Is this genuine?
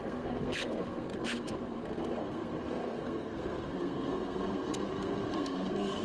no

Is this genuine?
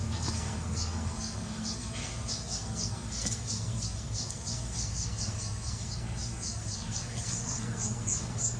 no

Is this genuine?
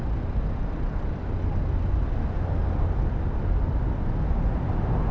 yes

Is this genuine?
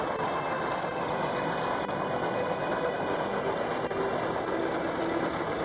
yes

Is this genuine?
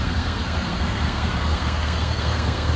no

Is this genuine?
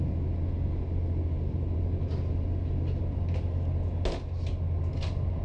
yes